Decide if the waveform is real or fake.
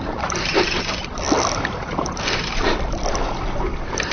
real